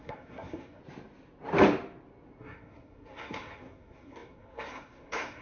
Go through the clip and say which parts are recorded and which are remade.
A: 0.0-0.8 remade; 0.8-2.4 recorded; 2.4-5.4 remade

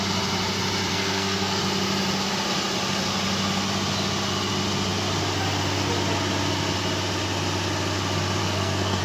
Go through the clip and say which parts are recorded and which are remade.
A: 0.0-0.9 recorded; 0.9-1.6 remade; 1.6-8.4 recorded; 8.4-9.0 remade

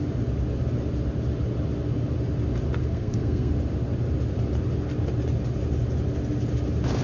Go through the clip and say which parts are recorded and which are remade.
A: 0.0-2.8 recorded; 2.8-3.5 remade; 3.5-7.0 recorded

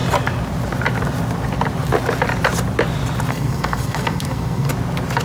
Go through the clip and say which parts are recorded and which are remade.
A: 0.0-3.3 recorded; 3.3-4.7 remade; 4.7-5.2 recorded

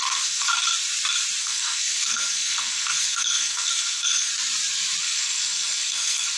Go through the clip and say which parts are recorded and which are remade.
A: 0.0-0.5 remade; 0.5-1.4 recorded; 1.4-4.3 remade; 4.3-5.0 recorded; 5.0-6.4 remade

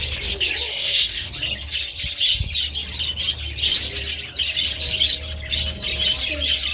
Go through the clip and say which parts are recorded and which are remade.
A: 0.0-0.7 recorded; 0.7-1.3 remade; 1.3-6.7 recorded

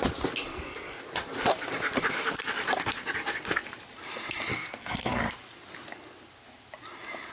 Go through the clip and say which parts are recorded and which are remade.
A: 0.0-0.5 recorded; 0.5-1.0 remade; 1.0-4.5 recorded; 4.5-5.2 remade; 5.2-7.3 recorded